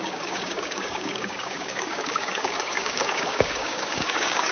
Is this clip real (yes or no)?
no